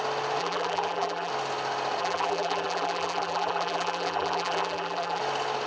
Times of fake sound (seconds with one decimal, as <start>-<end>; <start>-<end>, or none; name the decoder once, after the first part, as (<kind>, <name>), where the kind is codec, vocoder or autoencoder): 0.4-1.3 (vocoder, BigVGAN v2); 2.0-5.2